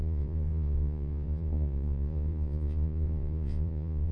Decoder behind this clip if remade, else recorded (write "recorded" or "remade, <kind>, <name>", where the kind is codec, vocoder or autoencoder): remade, vocoder, Vocos